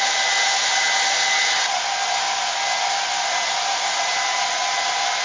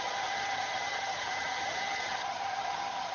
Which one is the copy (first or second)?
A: second